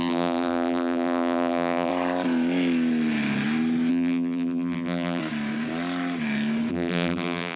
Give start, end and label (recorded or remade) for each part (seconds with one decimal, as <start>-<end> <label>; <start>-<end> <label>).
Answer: 0.0-1.9 remade; 1.9-3.9 recorded; 3.9-5.2 remade; 5.2-6.7 recorded; 6.7-7.6 remade